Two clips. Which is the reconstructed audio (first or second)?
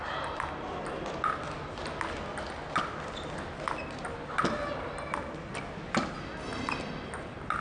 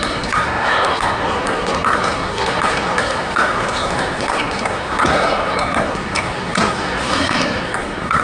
second